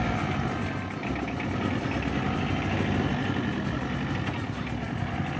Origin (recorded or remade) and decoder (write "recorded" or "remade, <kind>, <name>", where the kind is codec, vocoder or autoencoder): recorded